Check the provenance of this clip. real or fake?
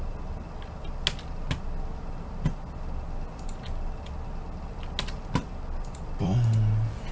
real